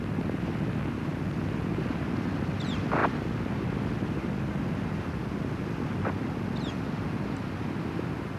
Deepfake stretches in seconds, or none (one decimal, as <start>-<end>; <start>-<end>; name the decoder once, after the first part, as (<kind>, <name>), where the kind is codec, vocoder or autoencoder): none